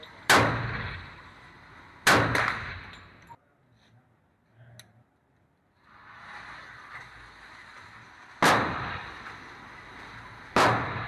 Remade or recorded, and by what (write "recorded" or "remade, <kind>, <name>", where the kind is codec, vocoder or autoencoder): recorded